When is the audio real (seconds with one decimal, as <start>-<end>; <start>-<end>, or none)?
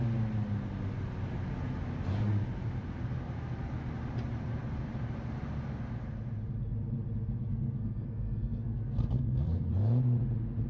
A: 0.0-7.4; 9.7-10.7